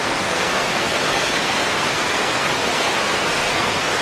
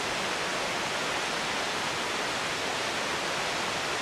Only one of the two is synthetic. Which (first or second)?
first